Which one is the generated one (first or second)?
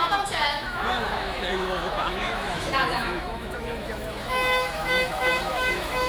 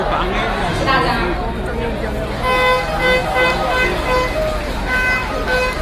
first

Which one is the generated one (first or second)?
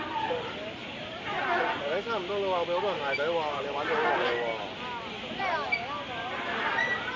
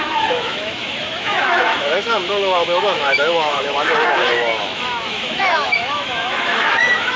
second